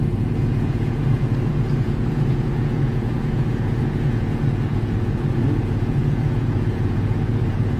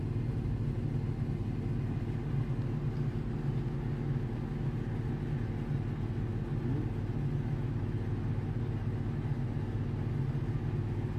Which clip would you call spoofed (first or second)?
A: first